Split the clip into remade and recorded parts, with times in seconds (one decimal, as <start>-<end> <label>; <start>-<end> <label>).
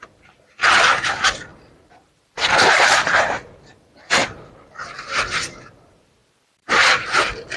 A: 0.0-7.6 remade